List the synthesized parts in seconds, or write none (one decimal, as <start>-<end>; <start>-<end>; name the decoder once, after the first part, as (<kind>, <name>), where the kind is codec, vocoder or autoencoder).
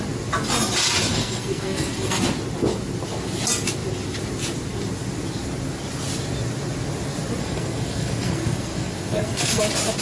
1.1-2.2 (codec, SNAC); 7.4-9.6